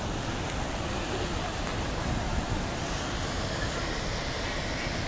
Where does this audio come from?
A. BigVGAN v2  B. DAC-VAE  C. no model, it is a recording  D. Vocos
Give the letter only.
C